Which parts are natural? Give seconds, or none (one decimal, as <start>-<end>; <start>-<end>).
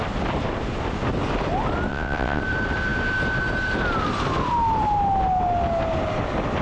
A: 0.0-1.9; 2.4-6.6